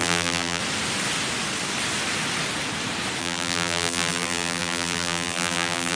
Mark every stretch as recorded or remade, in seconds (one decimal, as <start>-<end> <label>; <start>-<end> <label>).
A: 0.0-0.6 remade; 0.6-3.2 recorded; 3.2-6.0 remade